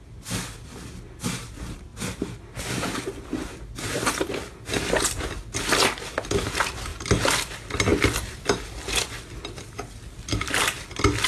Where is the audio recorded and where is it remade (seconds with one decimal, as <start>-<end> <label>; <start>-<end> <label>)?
0.0-11.3 recorded